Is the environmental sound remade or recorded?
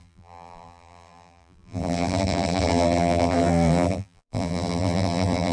remade